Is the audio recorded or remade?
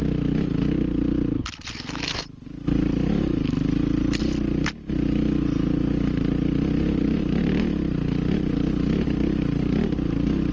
recorded